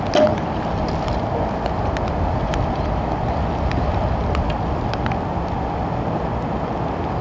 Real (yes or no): yes